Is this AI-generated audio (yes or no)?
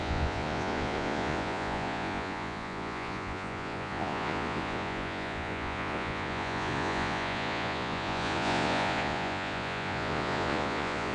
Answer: yes